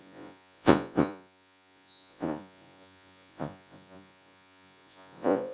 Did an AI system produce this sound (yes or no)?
yes